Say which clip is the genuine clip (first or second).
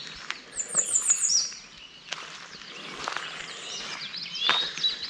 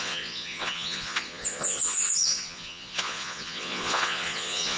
first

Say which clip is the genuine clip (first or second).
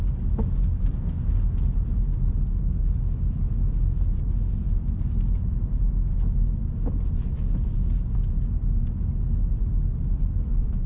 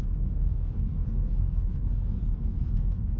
first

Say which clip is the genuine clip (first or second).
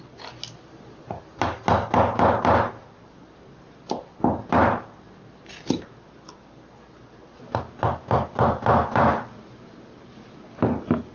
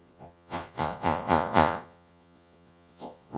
first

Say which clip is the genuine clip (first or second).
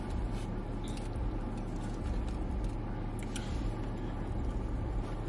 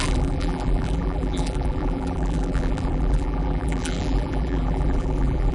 first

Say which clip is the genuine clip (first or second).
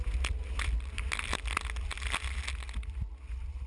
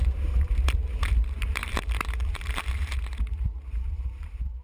first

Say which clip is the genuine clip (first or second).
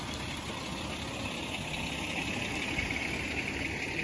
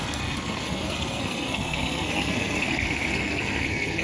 first